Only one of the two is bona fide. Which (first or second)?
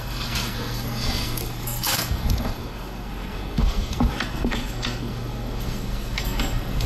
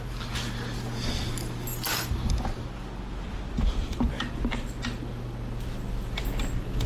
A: second